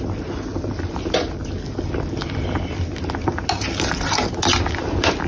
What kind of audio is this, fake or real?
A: real